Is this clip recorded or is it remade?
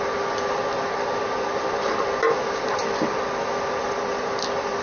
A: recorded